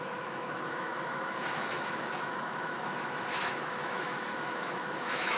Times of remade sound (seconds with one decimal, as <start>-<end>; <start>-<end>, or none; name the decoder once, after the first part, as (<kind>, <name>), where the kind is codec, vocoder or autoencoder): 0.0-5.4 (autoencoder, DAC-VAE)